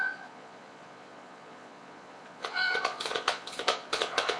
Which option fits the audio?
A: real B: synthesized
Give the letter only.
B